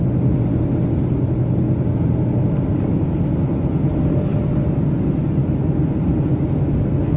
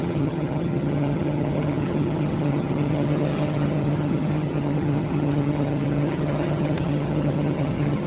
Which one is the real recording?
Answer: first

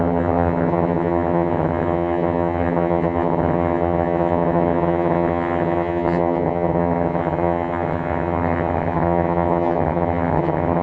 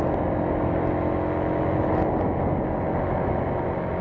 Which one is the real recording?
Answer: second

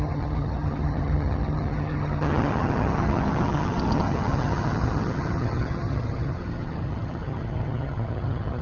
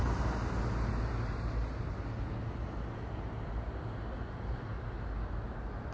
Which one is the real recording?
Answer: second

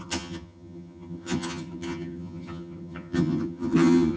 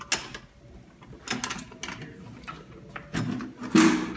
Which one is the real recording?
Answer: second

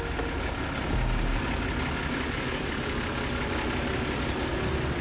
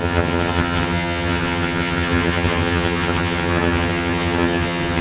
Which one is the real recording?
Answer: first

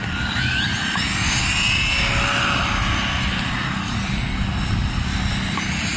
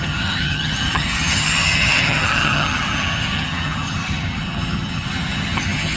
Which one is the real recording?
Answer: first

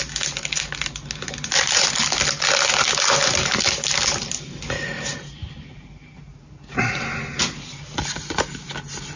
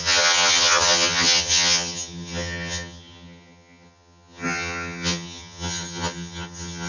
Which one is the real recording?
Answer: first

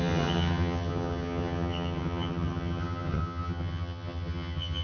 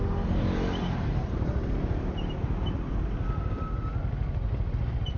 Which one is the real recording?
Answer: second